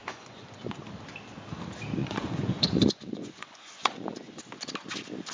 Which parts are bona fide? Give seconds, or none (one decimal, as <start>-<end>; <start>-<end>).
0.8-2.0; 4.4-5.3